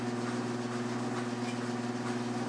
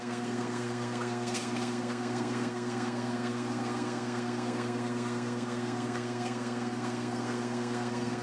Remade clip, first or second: second